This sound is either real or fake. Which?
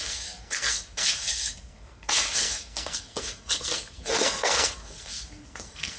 fake